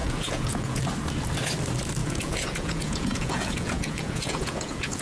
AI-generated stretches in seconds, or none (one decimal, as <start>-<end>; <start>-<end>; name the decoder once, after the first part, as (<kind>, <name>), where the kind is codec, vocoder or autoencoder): 0.0-0.8 (vocoder, Vocos); 2.0-5.0